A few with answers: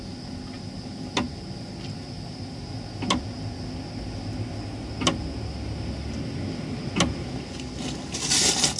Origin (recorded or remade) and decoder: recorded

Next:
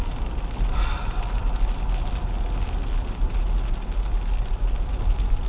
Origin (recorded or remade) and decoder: recorded